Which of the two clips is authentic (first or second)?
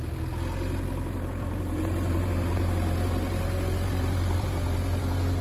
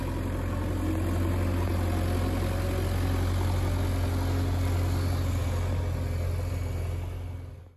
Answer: second